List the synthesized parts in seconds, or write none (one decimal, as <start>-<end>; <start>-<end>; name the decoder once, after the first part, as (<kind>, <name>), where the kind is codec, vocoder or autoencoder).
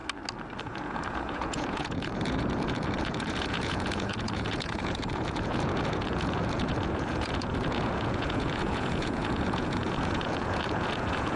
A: 0.6-11.4 (vocoder, Vocos)